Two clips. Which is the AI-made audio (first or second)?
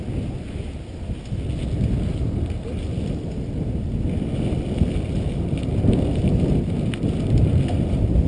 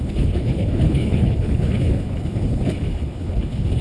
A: second